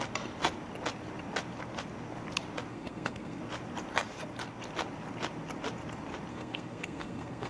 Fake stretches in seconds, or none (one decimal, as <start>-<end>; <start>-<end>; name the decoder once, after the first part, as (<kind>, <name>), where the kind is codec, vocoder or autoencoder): 2.7-3.4 (codec, SNAC); 6.3-7.5